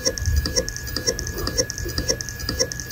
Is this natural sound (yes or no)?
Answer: yes